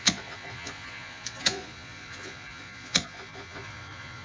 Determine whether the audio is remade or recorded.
remade